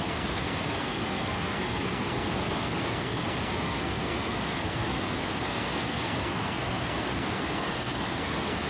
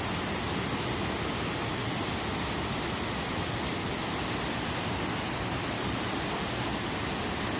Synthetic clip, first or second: first